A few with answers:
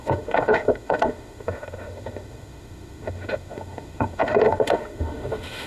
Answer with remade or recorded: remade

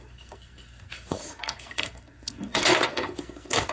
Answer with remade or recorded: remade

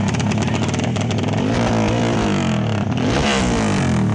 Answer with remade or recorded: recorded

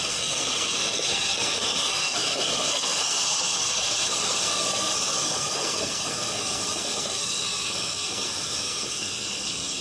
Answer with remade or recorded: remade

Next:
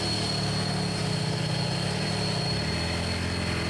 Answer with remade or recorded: recorded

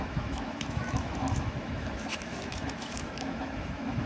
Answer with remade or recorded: remade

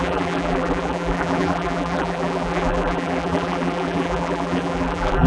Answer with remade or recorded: remade